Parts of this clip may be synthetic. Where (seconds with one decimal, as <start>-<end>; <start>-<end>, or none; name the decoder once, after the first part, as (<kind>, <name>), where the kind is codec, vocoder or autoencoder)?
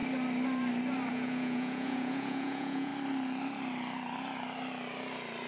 1.1-2.9 (vocoder, Vocos)